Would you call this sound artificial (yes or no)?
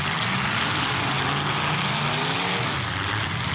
no